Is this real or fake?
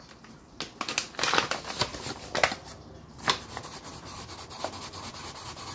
real